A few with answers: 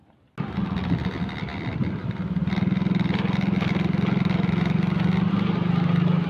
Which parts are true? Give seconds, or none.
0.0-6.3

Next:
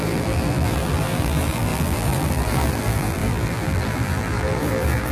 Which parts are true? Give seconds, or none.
none

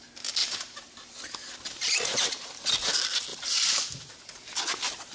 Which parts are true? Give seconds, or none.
0.0-0.4; 2.7-3.3; 4.1-5.1

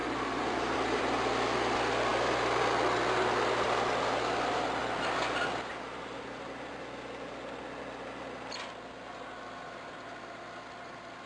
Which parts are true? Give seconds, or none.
1.0-11.3

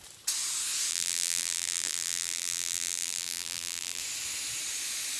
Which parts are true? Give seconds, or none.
0.0-0.9; 4.0-5.2

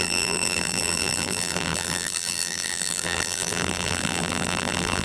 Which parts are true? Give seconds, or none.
none

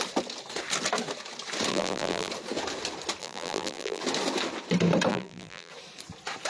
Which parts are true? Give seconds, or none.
0.0-1.7; 2.3-3.2; 4.0-5.1; 5.7-6.5

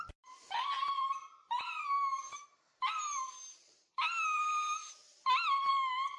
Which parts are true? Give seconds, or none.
1.1-2.5